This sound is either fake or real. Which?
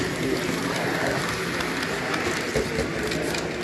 real